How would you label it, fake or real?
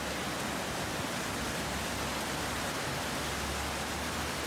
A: real